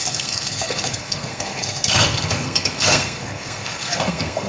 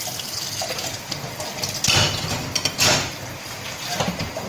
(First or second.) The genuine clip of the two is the second